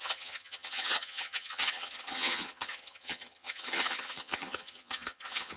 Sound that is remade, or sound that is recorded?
remade